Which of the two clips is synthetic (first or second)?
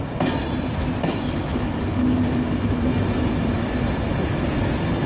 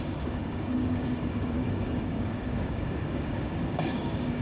second